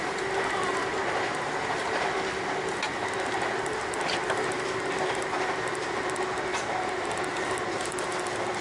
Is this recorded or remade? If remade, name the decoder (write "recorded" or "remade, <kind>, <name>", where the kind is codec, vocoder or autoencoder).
recorded